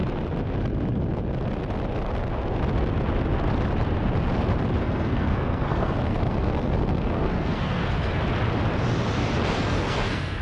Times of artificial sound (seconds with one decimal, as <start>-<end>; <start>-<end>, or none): 4.8-8.2; 9.5-10.4